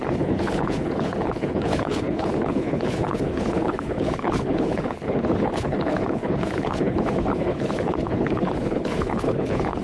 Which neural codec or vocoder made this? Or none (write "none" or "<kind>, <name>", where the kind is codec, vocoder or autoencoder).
codec, HILCodec